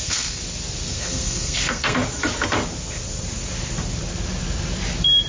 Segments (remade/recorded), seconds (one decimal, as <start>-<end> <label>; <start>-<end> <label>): 0.0-0.4 remade; 0.4-0.9 recorded; 0.9-2.0 remade; 2.0-5.3 recorded

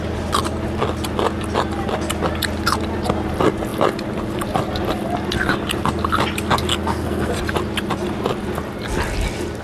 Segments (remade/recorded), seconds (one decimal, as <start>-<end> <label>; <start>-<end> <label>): 0.0-6.7 recorded; 6.7-7.3 remade; 7.3-9.6 recorded

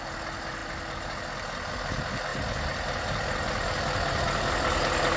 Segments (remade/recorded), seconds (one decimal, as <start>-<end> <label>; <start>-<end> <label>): 0.0-5.2 recorded

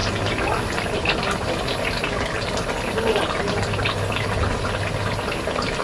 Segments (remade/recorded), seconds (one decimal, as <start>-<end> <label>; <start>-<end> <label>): 0.0-5.8 recorded

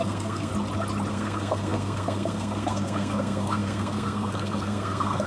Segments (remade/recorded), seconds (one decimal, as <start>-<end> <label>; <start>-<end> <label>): 0.0-0.5 remade; 0.5-1.1 recorded; 1.1-5.3 remade

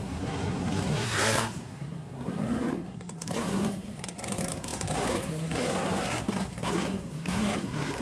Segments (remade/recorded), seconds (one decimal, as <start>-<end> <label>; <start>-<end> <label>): 0.0-8.0 remade

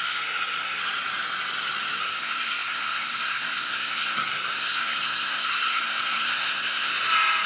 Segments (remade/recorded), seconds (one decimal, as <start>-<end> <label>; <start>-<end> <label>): 0.0-0.8 remade; 0.8-2.0 recorded; 2.0-6.9 remade; 6.9-7.5 recorded